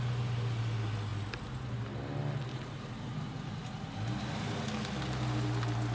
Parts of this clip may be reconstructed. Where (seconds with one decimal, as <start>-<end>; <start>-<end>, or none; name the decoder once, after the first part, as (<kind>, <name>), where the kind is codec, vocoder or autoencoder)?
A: none